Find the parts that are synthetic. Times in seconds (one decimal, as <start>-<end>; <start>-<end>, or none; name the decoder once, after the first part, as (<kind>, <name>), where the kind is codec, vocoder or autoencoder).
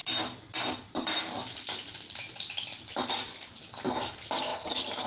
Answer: none